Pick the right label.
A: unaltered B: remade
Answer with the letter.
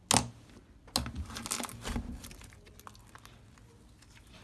A